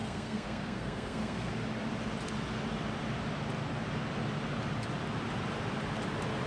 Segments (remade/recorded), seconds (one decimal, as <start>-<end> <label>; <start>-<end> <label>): 0.0-1.5 remade; 1.5-6.5 recorded